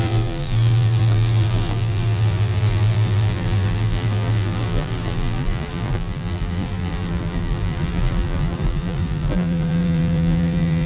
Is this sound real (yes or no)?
no